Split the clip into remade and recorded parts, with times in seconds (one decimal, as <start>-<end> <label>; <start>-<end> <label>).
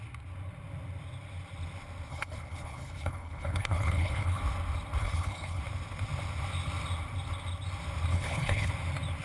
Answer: 0.0-2.1 recorded; 2.1-4.4 remade; 4.4-5.0 recorded; 5.0-5.6 remade; 5.6-8.1 recorded; 8.1-8.7 remade; 8.7-9.2 recorded